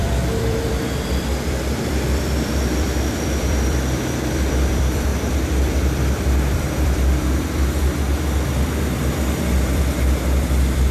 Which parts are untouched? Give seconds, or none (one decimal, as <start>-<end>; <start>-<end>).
none